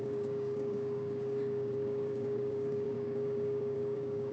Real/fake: fake